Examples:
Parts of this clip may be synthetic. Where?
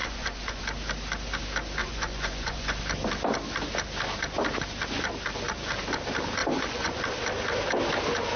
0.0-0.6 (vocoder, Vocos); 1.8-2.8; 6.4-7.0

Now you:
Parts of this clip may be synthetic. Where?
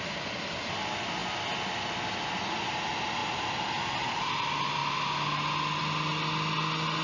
none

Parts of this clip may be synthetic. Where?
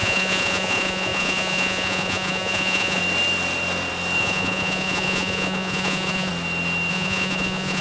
0.0-3.0 (vocoder, Vocos); 4.2-6.3; 6.9-7.8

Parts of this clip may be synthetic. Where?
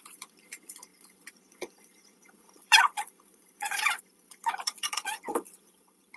0.0-6.2 (vocoder, Vocos)